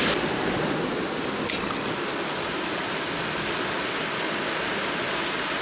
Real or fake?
real